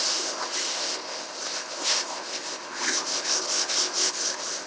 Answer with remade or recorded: remade